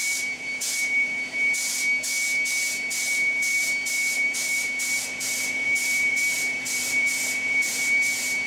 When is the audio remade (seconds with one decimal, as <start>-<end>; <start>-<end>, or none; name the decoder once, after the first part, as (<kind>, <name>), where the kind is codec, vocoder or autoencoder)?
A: 0.0-0.7 (vocoder, BigVGAN v2); 3.4-8.1